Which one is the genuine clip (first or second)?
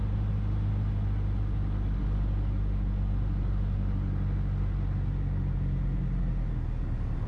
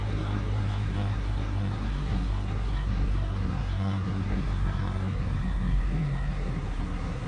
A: first